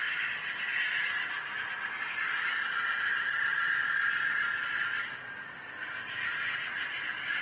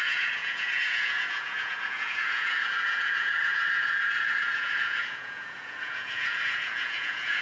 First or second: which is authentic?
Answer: first